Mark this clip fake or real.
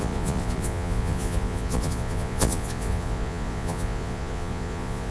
fake